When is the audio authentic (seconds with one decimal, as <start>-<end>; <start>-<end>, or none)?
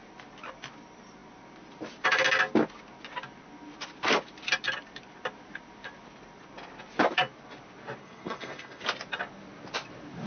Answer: 0.0-8.0; 8.8-10.3